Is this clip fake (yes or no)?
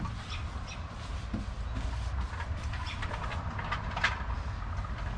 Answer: no